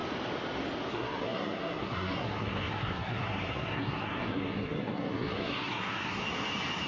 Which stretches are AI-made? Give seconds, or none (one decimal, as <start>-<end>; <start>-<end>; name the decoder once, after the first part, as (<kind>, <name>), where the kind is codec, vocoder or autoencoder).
0.9-6.2 (codec, SNAC)